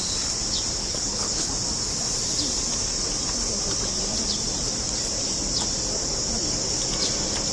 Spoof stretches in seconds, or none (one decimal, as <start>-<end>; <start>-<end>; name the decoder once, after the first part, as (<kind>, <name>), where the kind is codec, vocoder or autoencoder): 0.8-1.5 (codec, HILCodec)

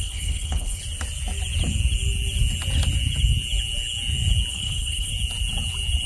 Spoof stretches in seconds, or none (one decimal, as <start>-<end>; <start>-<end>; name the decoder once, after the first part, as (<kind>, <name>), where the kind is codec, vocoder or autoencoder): 0.0-0.8 (codec, HILCodec); 4.5-5.1

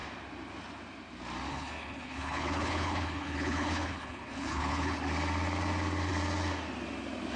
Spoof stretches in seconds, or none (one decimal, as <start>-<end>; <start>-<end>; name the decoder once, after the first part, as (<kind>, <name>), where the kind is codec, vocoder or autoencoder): 1.5-5.0 (codec, HILCodec)

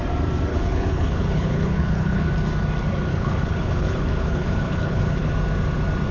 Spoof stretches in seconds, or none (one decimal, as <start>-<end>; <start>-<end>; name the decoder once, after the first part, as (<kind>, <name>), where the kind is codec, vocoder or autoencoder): 0.5-2.3 (codec, HILCodec); 3.1-5.3

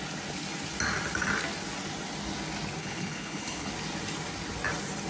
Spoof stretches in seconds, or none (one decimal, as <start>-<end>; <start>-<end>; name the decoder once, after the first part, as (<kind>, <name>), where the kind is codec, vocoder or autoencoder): 2.8-3.7 (codec, HILCodec)